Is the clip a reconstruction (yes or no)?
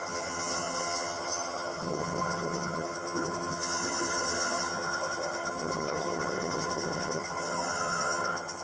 yes